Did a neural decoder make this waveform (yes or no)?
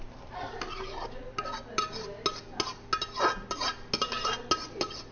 no